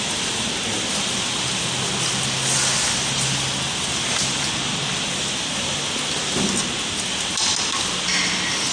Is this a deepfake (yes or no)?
no